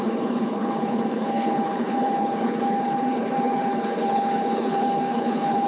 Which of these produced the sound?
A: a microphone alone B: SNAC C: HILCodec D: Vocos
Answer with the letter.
C